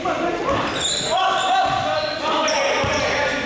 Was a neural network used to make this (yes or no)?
no